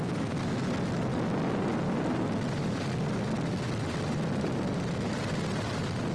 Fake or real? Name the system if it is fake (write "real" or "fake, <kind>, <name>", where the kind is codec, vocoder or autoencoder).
real